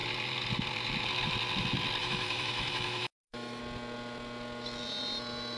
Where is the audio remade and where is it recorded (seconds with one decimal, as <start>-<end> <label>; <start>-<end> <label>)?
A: 0.0-2.0 recorded; 2.0-3.6 remade; 3.6-5.6 recorded